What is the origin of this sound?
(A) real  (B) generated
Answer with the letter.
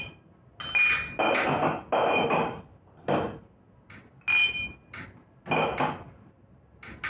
A